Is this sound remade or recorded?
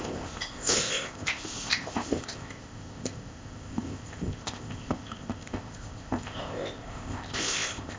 remade